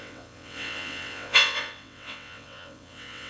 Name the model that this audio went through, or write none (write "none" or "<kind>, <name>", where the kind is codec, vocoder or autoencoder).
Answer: vocoder, WaveNeXt